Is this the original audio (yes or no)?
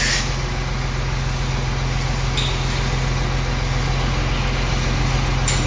yes